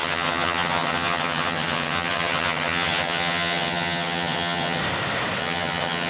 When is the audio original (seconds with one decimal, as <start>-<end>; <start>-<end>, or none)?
4.8-5.4